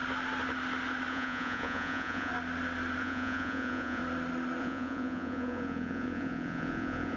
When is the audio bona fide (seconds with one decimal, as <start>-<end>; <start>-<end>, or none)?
0.0-1.1; 2.3-3.0; 4.0-4.6